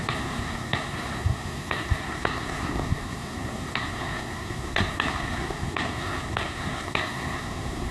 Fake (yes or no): yes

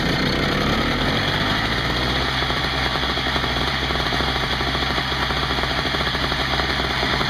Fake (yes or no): yes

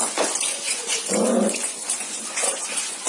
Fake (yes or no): yes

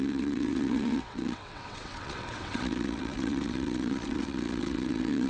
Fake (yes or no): yes